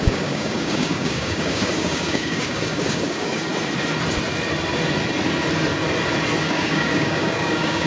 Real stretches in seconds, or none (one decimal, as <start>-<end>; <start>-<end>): 3.5-6.4